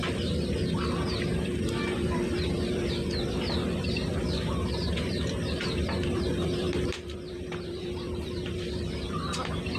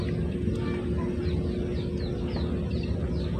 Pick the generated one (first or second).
first